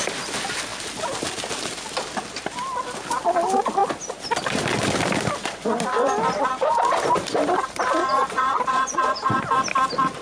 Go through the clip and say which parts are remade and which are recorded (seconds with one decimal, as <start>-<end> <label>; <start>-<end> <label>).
0.0-8.0 recorded; 8.0-9.4 remade; 9.4-10.2 recorded